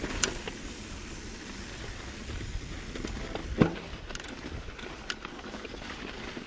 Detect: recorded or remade recorded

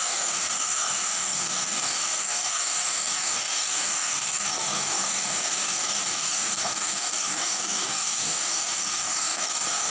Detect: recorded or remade remade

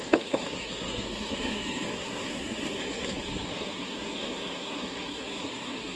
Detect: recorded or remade remade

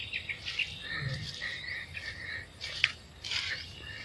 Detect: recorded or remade recorded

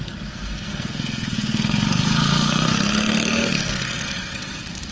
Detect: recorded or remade remade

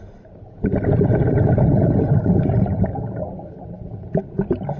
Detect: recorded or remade recorded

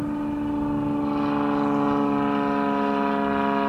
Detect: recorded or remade recorded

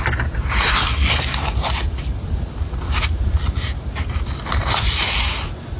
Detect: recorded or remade recorded